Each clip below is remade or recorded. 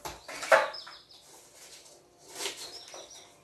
recorded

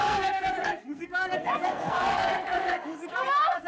remade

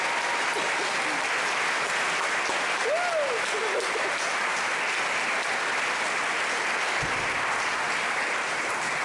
recorded